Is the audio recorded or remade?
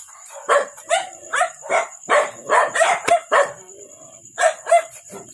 remade